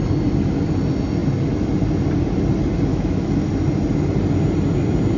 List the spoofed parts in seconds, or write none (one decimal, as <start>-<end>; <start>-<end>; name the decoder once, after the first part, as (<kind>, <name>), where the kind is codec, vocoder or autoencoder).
2.9-3.4 (autoencoder, DAC-VAE)